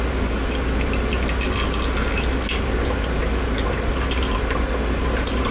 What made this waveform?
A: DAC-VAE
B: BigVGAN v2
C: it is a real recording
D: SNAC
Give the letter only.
C